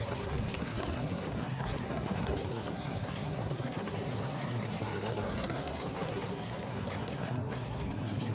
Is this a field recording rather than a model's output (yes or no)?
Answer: no